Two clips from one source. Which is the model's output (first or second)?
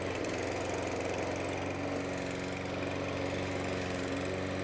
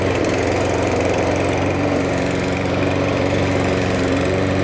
second